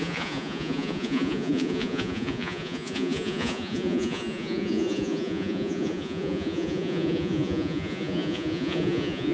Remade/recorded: remade